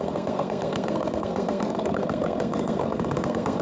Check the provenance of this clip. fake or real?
fake